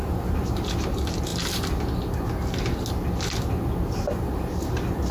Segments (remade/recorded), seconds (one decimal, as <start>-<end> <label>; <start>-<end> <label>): 0.0-5.1 recorded